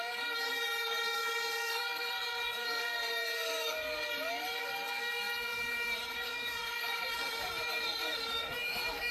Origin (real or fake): fake